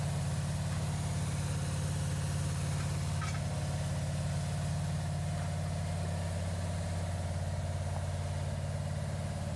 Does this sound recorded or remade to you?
recorded